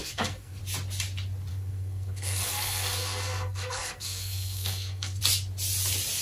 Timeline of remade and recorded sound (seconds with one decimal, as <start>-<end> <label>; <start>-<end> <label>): 0.0-0.6 remade; 0.6-1.5 recorded; 1.5-5.2 remade; 5.2-6.2 recorded